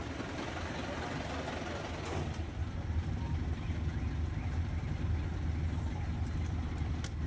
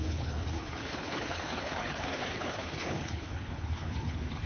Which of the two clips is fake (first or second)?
second